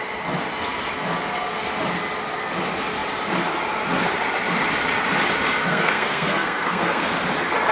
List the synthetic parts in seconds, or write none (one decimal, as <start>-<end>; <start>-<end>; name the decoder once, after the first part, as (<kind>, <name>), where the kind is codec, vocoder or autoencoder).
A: 5.7-7.1 (codec, SNAC)